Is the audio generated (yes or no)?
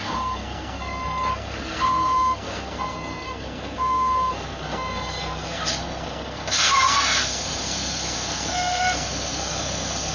yes